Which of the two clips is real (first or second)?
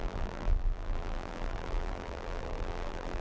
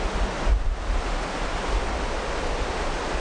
second